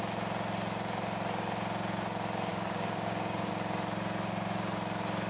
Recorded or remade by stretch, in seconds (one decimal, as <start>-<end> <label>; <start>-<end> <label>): 0.0-2.5 recorded; 2.5-3.5 remade; 3.5-5.3 recorded